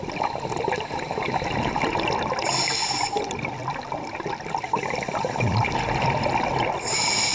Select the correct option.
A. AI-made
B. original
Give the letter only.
B